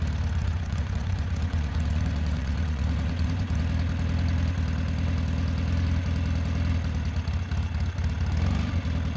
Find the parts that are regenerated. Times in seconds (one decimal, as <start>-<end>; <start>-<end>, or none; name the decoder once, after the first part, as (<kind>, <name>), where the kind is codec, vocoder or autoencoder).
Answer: 0.4-3.6 (vocoder, Vocos)